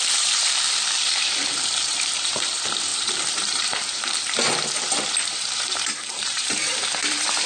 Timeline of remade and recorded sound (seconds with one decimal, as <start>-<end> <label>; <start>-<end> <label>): 0.0-7.5 remade